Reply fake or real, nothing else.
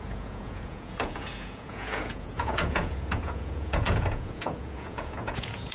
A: fake